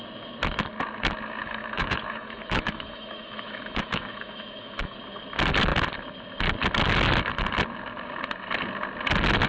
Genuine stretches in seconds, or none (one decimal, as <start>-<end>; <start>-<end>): 0.0-1.4; 5.0-9.5

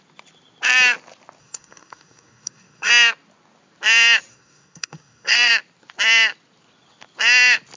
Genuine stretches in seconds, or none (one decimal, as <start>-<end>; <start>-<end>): 0.0-1.4; 2.9-4.3; 5.5-7.8

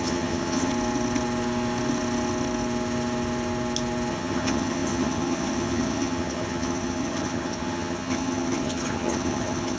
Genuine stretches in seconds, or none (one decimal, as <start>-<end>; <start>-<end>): 0.7-4.1

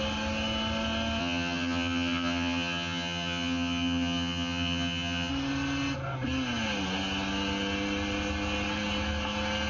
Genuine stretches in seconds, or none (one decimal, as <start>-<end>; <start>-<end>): 0.0-1.2; 5.3-9.7

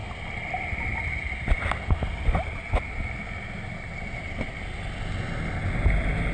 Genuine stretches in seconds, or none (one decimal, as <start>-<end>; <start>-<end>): 0.0-6.3

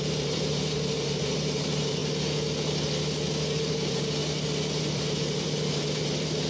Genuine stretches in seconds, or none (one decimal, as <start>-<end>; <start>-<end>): 2.0-3.6; 4.2-4.8